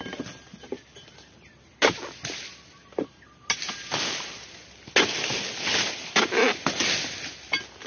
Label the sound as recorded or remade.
recorded